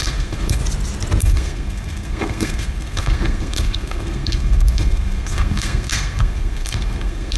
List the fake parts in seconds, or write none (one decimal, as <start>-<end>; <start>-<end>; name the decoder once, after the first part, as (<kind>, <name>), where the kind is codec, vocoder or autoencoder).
0.0-0.6 (codec, SNAC); 1.2-7.4